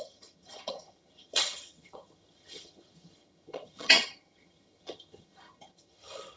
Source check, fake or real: fake